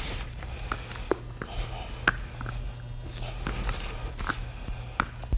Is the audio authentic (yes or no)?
yes